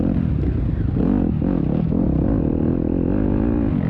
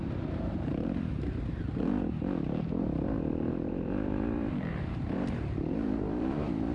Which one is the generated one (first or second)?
second